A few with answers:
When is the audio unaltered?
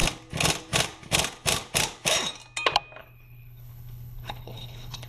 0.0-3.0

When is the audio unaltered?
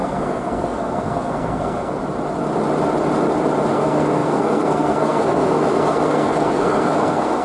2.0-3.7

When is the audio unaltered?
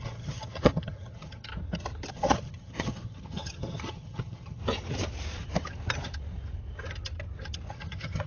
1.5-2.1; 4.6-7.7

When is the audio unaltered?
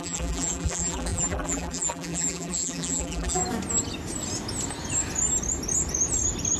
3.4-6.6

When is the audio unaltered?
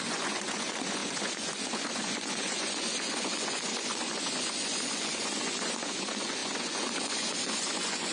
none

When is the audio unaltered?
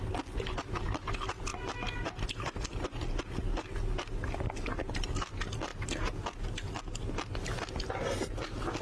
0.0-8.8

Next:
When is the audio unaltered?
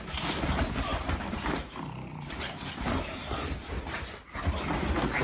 0.0-0.9; 4.0-5.2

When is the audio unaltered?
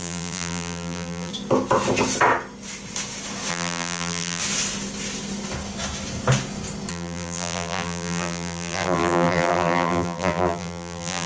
1.3-3.5; 4.4-6.9